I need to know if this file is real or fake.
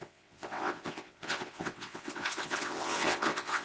fake